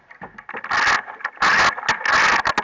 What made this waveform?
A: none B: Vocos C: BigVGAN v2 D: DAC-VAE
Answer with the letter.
A